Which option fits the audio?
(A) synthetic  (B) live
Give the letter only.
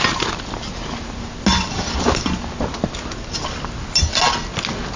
B